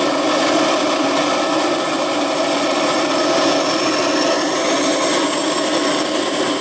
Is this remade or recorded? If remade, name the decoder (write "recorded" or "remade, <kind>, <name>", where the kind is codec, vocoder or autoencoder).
recorded